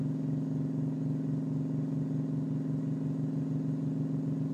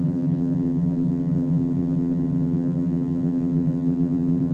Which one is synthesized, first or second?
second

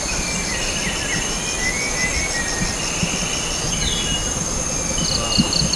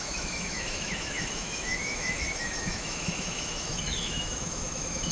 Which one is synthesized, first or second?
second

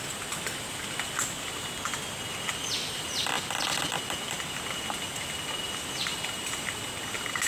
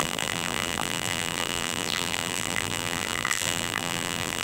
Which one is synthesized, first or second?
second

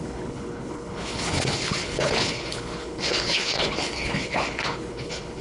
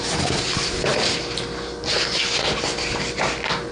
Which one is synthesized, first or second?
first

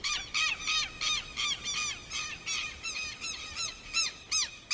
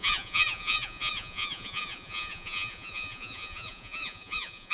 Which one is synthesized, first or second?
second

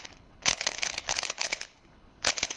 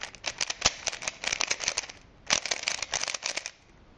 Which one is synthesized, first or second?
first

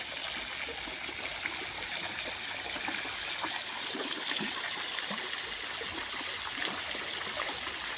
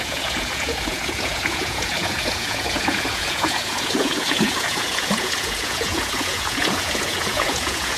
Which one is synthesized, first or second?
second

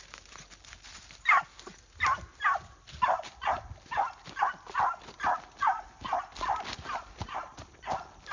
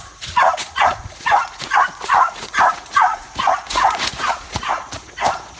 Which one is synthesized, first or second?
second